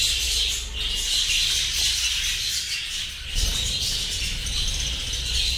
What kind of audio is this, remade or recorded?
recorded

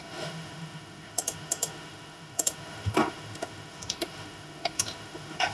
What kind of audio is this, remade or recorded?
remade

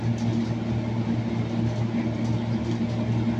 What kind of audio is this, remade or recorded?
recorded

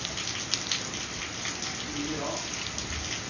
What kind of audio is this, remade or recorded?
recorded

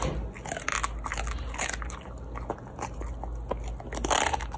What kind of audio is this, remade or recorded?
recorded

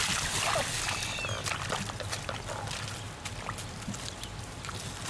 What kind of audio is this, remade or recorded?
recorded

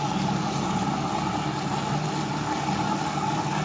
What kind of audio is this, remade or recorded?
recorded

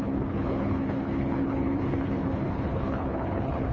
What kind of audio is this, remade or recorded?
remade